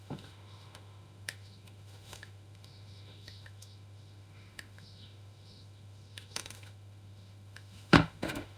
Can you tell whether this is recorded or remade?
remade